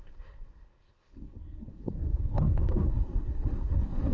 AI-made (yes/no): yes